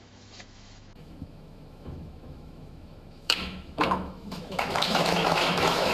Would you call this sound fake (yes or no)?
yes